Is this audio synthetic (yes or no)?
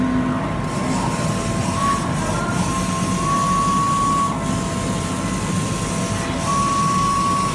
no